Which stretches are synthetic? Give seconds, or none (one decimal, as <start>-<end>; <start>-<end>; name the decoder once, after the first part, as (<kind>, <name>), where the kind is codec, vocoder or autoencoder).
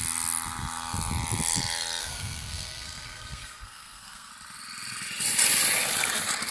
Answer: 2.0-4.3 (codec, SNAC)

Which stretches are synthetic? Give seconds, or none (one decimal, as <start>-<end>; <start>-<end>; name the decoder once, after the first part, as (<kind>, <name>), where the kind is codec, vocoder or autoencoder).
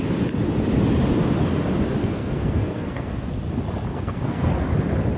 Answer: 2.0-3.3 (codec, SNAC); 3.9-4.5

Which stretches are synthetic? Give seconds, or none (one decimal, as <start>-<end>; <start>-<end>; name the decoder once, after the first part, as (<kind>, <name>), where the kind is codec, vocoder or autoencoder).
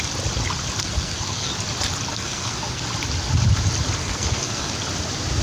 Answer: 0.8-1.5 (codec, SNAC); 2.1-2.8; 4.0-4.7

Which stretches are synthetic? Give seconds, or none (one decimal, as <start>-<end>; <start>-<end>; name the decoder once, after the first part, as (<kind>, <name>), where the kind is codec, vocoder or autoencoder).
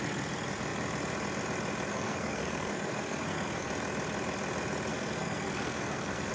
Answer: 1.9-3.7 (codec, SNAC); 4.9-6.3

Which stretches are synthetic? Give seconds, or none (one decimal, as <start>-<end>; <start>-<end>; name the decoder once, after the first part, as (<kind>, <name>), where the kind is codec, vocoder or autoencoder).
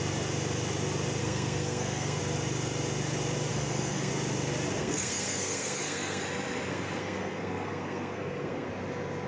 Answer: 1.2-2.2 (codec, SNAC); 3.5-4.1; 4.8-6.2; 6.7-8.7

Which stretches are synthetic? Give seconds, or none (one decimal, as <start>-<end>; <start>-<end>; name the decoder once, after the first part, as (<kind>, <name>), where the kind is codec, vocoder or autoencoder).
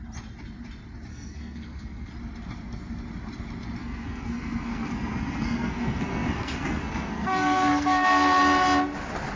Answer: 1.1-2.1 (codec, SNAC); 3.8-8.4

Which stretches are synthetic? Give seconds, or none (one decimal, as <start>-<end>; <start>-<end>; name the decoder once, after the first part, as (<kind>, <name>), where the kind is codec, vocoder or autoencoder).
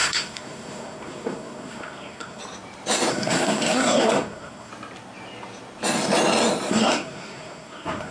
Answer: 0.0-2.4 (codec, SNAC); 3.1-4.7; 6.7-8.1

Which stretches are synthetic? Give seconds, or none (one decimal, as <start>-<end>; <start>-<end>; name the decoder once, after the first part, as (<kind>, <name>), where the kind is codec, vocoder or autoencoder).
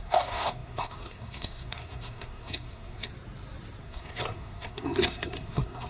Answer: 0.0-3.1 (codec, SNAC); 3.8-5.9